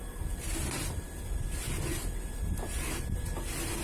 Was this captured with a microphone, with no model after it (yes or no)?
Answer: yes